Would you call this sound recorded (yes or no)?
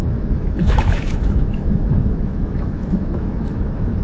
no